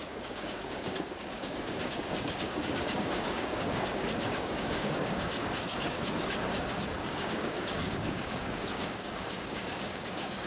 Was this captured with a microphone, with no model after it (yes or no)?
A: no